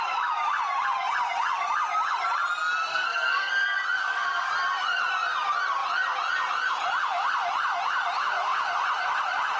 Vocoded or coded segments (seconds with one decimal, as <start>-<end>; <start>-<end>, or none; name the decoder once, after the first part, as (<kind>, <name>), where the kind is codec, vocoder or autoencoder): 2.9-3.5 (codec, SNAC); 4.0-4.5